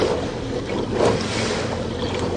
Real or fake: real